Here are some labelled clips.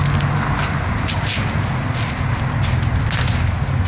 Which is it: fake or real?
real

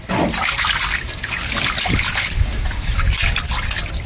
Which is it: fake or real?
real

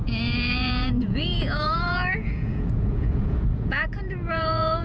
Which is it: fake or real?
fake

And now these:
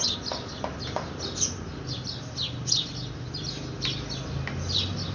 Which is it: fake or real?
real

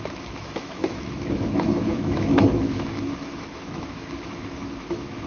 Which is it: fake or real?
fake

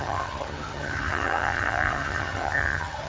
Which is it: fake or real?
fake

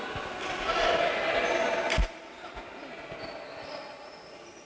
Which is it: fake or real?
real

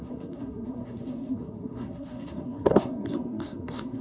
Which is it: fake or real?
fake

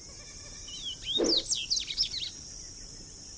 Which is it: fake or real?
real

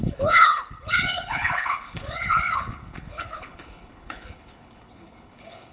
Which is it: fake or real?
fake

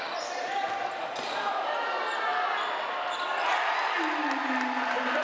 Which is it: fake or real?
real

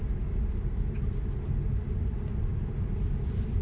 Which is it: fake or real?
real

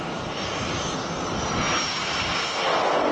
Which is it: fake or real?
real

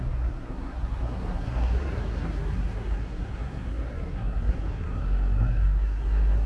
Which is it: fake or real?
fake